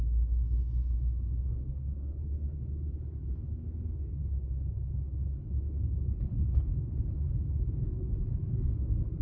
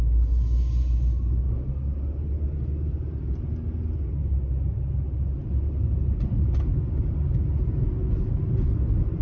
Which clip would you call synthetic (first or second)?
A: first